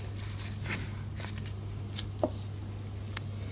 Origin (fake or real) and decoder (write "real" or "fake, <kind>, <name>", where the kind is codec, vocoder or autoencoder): real